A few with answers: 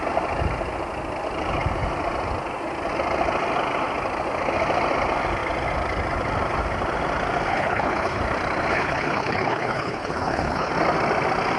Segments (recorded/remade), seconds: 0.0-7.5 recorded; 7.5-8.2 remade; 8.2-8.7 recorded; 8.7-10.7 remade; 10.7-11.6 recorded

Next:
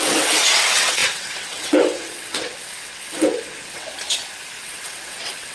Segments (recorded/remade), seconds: 0.0-3.9 remade; 3.9-4.6 recorded; 4.6-5.5 remade

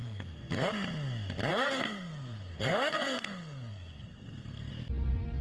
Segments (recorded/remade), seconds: 0.0-0.7 remade; 0.7-1.5 recorded; 1.5-4.7 remade; 4.7-5.4 recorded

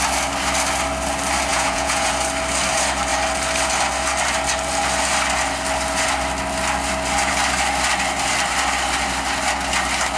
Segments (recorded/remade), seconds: 0.0-1.5 recorded; 1.5-2.1 remade; 2.1-10.2 recorded

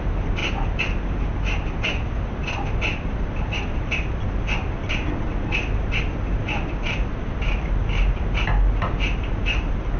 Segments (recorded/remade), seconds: 0.0-10.0 recorded